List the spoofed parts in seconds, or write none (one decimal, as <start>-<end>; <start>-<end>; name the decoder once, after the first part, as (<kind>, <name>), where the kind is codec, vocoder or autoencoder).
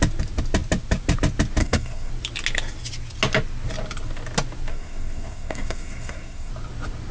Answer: 1.6-2.1 (codec, SNAC); 4.7-6.5